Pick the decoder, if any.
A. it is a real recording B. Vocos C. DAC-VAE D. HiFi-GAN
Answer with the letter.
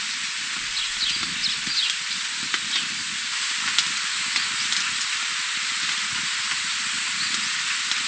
A